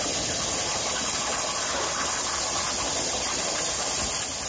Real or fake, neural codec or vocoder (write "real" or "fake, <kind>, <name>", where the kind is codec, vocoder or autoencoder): real